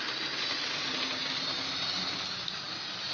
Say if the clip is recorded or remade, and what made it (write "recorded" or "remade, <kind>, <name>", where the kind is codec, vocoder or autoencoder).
recorded